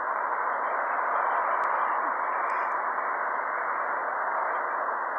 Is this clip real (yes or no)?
yes